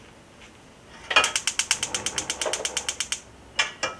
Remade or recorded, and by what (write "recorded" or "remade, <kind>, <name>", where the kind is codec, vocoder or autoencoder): recorded